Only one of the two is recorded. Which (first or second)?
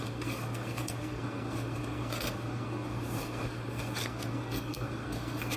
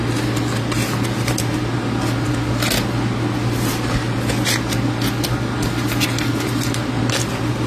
second